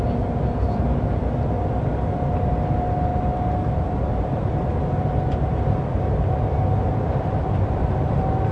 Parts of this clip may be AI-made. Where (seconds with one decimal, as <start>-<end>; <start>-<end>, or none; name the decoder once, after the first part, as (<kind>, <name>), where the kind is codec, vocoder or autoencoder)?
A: none